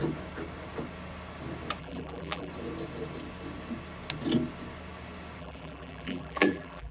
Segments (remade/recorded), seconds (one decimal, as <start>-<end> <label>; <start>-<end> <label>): 0.0-1.8 recorded; 1.8-2.5 remade; 2.5-5.4 recorded; 5.4-6.9 remade